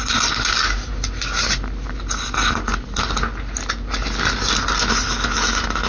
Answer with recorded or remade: recorded